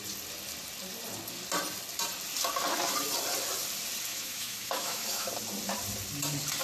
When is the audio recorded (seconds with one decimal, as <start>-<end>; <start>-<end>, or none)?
0.0-4.1; 5.3-6.6